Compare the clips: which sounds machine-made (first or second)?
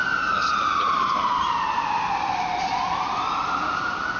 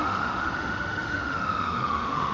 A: second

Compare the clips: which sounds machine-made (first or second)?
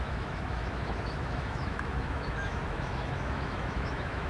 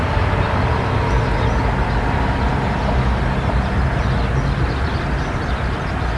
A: first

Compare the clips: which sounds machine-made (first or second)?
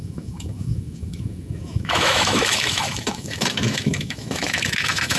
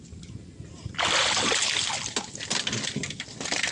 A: first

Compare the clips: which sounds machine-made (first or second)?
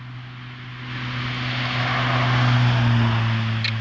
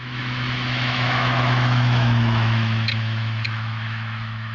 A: second